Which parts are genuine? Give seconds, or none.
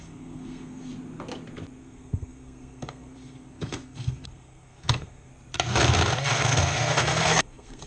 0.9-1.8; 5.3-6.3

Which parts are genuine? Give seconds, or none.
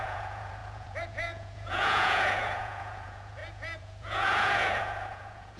none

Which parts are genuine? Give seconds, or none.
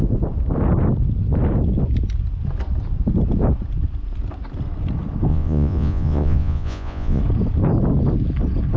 0.0-5.3; 7.2-8.8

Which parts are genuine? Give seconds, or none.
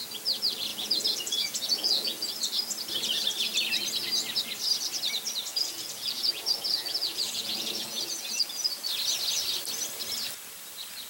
0.0-0.7; 2.3-5.5; 8.8-11.1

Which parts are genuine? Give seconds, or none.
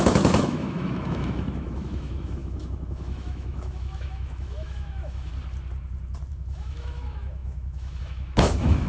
5.3-6.3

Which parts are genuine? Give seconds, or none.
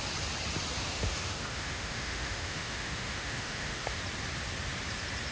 0.0-0.8; 4.0-5.3